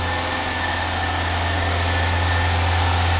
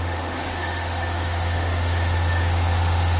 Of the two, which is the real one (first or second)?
first